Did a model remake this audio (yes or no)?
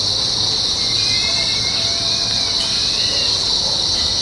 no